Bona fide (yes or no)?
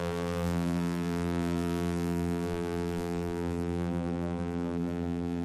no